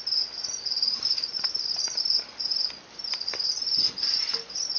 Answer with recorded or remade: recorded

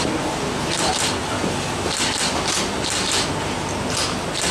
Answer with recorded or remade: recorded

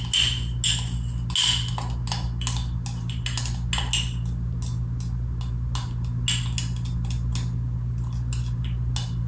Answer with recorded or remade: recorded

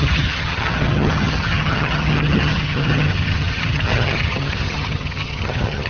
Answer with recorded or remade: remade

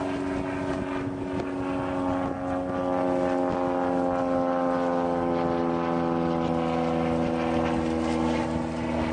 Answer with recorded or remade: recorded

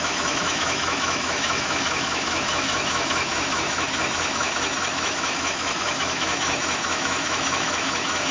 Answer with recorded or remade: remade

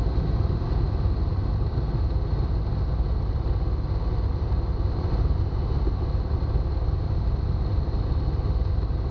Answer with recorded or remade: recorded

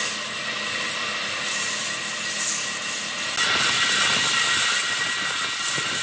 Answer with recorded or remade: recorded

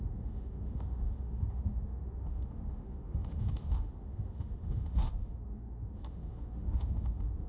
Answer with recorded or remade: remade